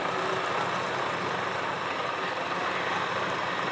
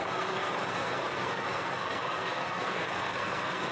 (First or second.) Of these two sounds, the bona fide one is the first